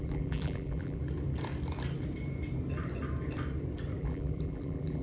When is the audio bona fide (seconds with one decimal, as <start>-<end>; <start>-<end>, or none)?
1.0-4.0